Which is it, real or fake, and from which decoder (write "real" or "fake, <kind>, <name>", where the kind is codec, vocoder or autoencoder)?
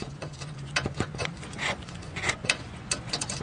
fake, vocoder, Vocos